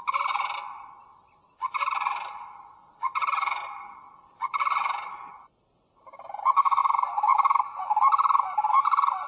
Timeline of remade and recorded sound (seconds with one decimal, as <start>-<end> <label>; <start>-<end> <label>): 0.0-9.3 recorded